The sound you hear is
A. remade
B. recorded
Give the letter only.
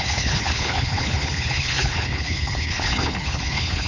A